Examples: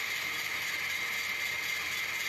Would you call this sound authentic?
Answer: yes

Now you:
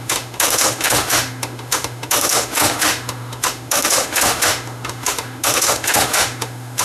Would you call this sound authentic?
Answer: no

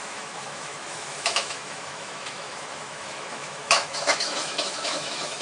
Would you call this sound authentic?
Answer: no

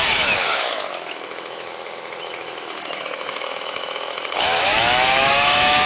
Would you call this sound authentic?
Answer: no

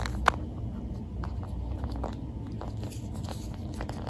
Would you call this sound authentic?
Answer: yes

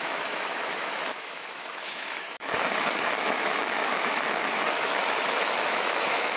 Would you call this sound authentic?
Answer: no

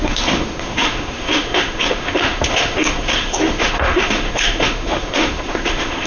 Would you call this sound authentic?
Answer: no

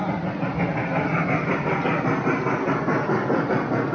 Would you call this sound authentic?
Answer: yes